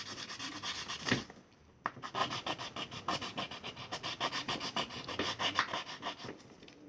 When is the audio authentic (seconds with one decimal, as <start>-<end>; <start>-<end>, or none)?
0.0-2.2; 5.6-6.9